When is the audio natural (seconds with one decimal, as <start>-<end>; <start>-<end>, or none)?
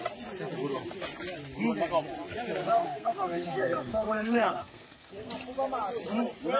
0.0-2.6; 5.3-6.6